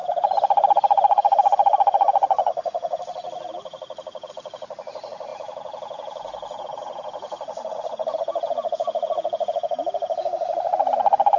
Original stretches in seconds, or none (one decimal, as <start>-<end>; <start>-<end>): 0.0-11.4